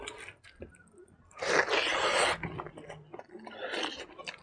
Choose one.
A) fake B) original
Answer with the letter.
B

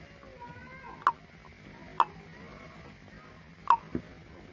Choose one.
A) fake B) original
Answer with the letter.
B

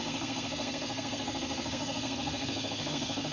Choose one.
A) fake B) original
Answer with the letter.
A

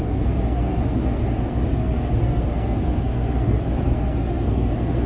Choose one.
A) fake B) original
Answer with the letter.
A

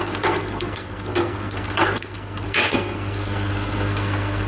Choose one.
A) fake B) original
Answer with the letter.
A